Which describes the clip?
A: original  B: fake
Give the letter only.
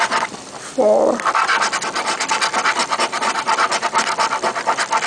B